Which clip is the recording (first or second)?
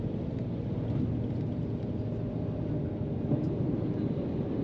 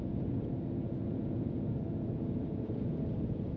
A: first